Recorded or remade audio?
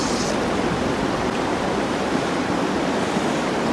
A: remade